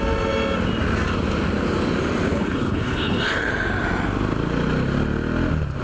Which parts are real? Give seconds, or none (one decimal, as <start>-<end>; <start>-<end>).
0.0-2.3; 3.5-5.8